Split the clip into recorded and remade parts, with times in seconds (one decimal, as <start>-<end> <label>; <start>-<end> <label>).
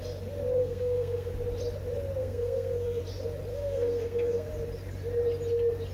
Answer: 0.0-0.6 recorded; 0.6-1.3 remade; 1.3-2.2 recorded; 2.2-3.0 remade; 3.0-3.5 recorded; 3.5-4.5 remade; 4.5-5.9 recorded